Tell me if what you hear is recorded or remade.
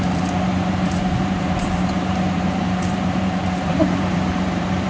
remade